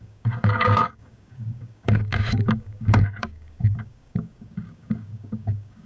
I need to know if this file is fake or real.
fake